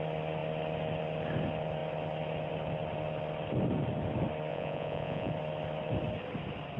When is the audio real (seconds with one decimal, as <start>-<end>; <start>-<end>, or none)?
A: 0.0-4.5; 5.3-6.8